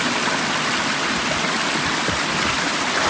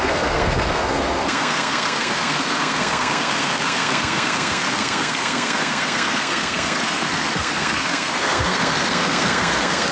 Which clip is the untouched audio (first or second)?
first